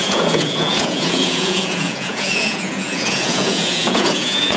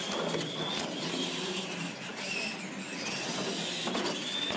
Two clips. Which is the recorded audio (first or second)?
second